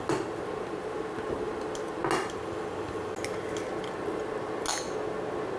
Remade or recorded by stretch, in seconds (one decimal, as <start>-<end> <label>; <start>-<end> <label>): 0.0-5.6 recorded